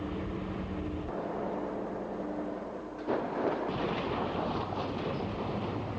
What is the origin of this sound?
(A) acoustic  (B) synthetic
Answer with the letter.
A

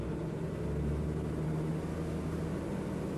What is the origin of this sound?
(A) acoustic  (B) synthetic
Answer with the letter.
A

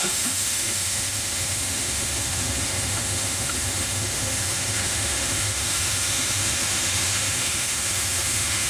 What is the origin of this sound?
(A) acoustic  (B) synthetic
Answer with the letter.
B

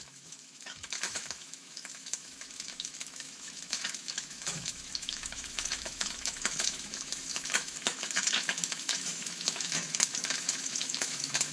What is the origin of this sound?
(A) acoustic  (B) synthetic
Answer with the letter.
B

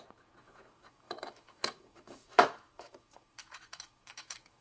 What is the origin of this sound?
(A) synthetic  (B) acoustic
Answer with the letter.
A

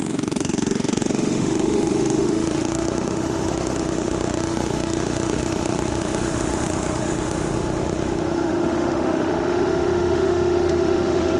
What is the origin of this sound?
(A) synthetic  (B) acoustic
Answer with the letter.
A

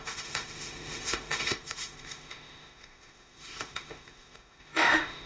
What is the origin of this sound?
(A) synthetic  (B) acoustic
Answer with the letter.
A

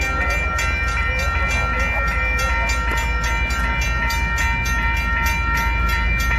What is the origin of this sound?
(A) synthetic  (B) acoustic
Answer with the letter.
B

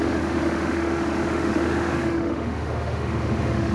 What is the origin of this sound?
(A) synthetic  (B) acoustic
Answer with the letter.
A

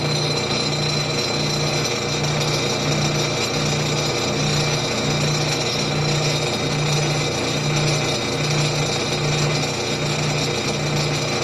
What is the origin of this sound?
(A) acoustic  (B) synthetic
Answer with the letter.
A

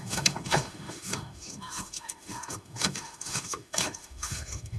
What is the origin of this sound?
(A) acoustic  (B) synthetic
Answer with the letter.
B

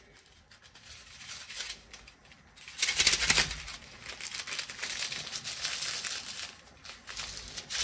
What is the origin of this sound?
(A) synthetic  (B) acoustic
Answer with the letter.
B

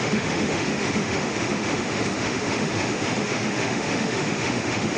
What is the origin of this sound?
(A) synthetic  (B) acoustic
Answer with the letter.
A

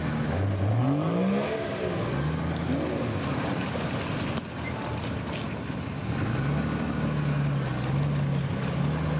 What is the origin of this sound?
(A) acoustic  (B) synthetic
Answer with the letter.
A